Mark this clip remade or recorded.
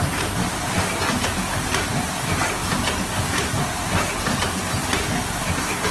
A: recorded